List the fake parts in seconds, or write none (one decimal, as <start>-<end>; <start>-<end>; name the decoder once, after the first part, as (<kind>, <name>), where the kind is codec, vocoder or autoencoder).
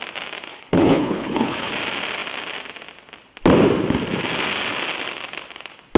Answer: 0.5-1.7 (codec, HILCodec)